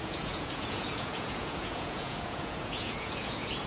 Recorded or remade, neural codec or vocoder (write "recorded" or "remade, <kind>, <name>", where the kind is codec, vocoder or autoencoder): remade, vocoder, Vocos